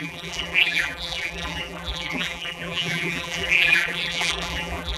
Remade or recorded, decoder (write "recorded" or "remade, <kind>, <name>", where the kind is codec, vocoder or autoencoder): remade, vocoder, BigVGAN v2